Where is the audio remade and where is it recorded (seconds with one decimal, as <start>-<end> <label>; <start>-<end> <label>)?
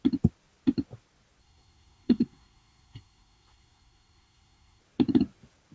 0.0-1.4 recorded; 1.4-4.8 remade; 4.8-5.7 recorded